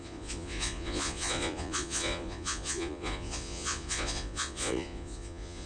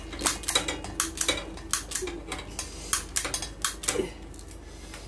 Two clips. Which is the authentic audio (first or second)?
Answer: second